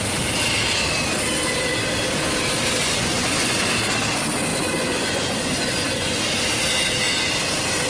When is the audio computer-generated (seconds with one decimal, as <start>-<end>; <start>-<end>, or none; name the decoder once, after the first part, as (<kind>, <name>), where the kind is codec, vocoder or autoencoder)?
2.8-3.6 (vocoder, Vocos); 4.5-6.2